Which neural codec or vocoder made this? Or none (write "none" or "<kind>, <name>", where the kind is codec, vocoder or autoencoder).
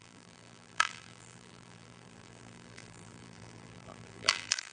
vocoder, BigVGAN v2